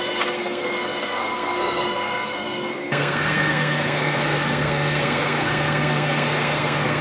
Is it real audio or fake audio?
fake